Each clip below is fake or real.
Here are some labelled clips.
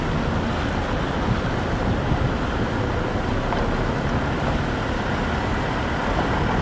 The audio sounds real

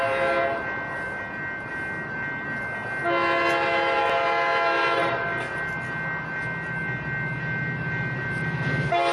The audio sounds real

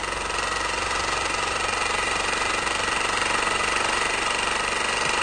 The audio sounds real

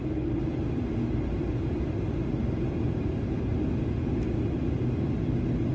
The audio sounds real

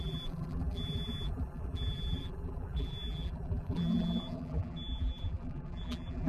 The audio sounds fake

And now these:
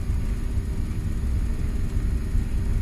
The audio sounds real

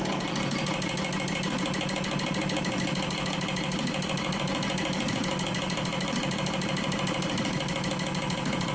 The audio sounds real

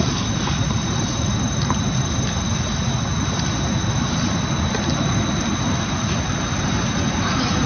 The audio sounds real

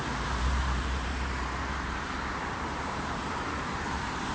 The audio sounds fake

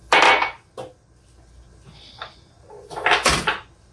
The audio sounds real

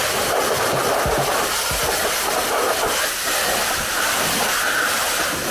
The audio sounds fake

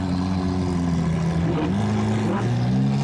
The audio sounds real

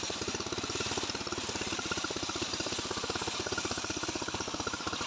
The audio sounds fake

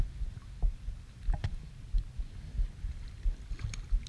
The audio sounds real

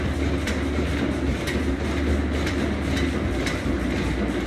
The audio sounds real